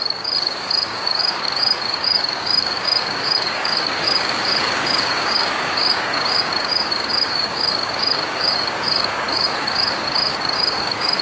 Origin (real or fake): fake